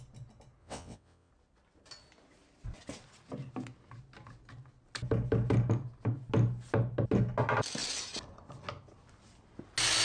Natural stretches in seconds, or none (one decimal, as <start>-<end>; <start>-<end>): 0.0-0.6; 1.3-10.0